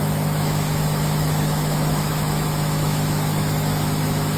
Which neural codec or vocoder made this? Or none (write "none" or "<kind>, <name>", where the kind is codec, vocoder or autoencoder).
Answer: autoencoder, DAC-VAE